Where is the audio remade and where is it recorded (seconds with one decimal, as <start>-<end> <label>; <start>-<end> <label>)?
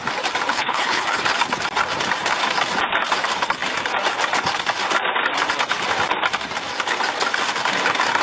0.0-0.5 recorded; 0.5-1.2 remade; 1.2-8.2 recorded